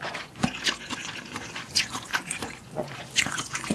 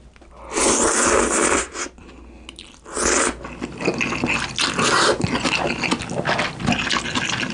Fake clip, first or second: first